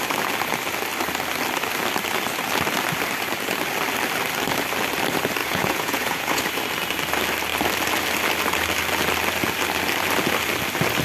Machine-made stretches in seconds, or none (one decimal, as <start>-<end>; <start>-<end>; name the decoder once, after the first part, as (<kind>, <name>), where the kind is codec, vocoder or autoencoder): 5.4-6.4 (vocoder, Vocos)